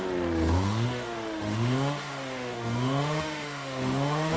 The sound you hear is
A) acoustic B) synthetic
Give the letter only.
B